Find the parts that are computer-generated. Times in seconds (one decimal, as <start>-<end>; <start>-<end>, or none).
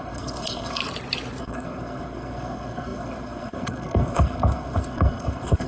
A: 0.0-0.8; 1.4-5.7